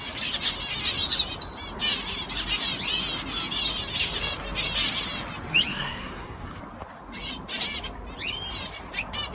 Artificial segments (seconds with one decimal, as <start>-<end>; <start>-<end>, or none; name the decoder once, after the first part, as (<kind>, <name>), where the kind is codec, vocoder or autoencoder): 5.7-6.6 (codec, SNAC)